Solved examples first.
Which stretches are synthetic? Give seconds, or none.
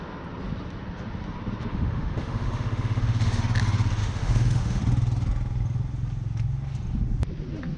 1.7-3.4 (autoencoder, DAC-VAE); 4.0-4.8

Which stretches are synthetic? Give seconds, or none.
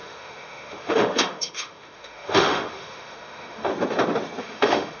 0.0-3.7 (autoencoder, DAC-VAE); 4.4-5.0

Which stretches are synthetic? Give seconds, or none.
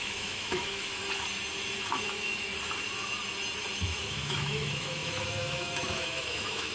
0.0-1.0 (autoencoder, DAC-VAE); 1.9-2.5; 3.8-6.7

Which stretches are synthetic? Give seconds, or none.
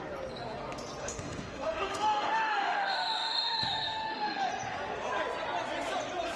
1.0-4.5 (autoencoder, DAC-VAE)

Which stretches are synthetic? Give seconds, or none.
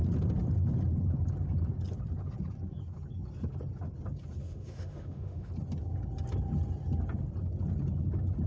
4.4-5.5 (autoencoder, DAC-VAE)